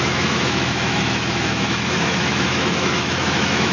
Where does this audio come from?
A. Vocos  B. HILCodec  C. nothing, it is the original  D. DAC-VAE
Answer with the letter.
D